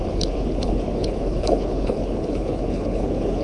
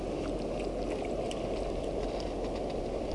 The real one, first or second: second